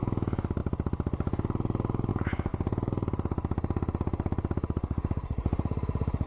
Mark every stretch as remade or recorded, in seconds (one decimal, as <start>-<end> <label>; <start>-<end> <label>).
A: 0.0-2.5 recorded; 2.5-6.3 remade